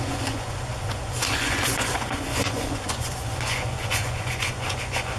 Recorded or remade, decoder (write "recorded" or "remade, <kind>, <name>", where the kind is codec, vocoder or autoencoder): remade, vocoder, Vocos